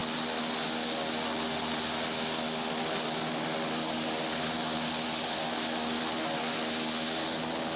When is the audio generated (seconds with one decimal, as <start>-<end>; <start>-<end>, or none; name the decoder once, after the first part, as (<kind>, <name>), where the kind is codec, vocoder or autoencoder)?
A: none